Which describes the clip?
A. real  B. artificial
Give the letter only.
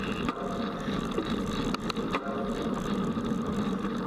A